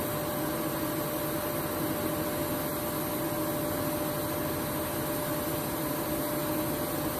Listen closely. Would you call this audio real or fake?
real